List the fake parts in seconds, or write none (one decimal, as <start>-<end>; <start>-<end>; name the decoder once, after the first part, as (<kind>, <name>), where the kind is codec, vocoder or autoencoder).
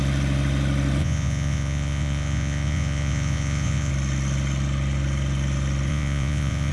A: 1.0-3.9 (vocoder, Vocos); 5.9-6.7